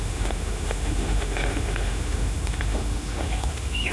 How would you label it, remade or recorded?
remade